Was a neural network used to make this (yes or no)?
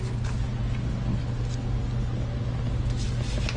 no